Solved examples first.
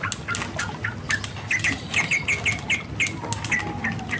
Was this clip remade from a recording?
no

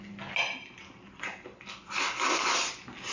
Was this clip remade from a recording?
no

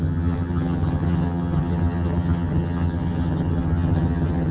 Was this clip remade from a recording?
yes